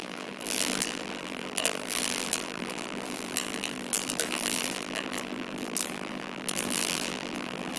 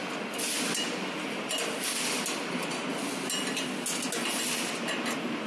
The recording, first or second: second